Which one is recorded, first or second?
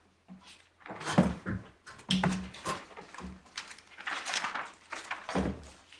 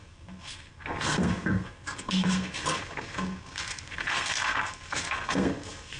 first